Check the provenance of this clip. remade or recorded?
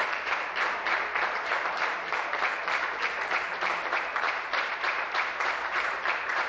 remade